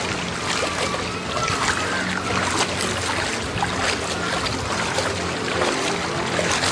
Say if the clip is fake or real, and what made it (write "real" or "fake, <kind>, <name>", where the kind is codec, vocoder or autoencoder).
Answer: real